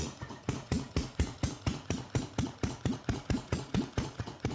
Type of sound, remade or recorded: remade